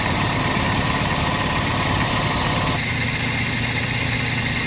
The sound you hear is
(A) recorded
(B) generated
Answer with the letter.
A